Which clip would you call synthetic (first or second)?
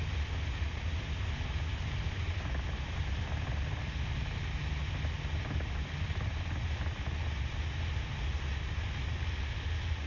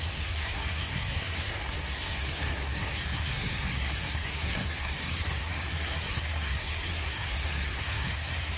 second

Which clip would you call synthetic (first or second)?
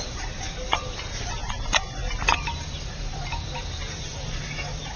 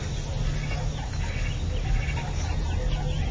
first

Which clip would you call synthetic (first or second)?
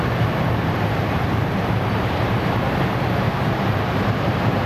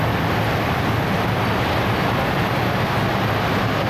first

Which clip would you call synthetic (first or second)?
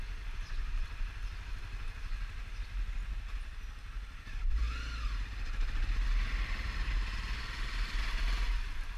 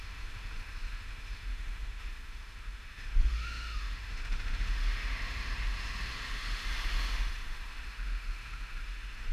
second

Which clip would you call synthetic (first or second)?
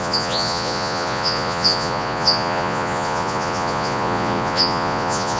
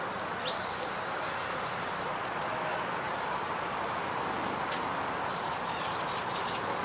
first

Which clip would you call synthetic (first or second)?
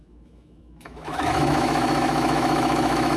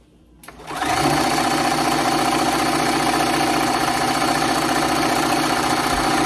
first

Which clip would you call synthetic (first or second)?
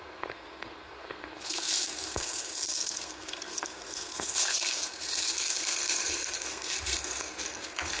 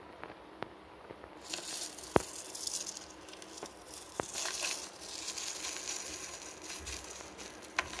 first